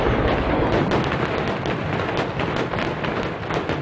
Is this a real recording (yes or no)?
yes